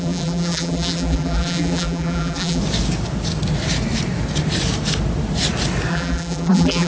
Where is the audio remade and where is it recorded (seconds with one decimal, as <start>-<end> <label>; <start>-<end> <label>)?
0.0-2.6 remade; 2.6-5.9 recorded; 5.9-6.9 remade